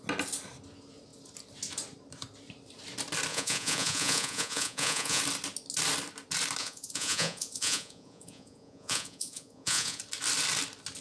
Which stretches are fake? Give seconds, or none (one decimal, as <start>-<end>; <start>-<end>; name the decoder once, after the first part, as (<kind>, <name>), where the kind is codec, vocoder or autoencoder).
3.3-5.2 (vocoder, Vocos); 6.6-10.0